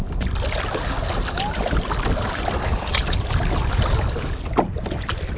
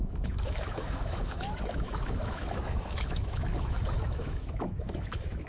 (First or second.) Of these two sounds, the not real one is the second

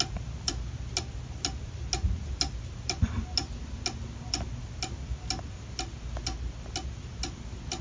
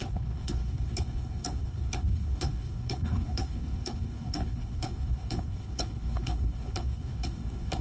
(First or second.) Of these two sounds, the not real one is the second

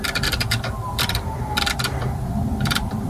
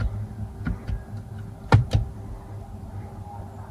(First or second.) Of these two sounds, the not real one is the first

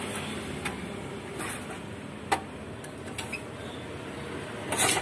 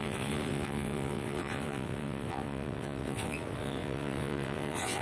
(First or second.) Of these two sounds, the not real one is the second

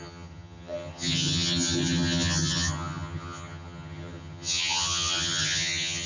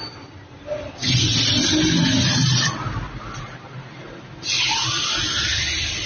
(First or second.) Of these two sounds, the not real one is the first